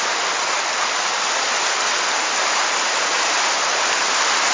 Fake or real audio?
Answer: real